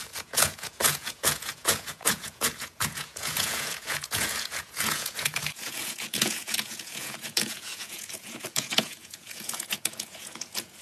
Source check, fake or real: fake